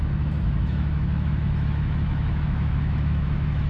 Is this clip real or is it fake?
fake